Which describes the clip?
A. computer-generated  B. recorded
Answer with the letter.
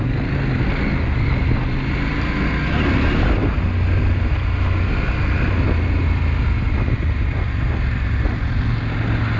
B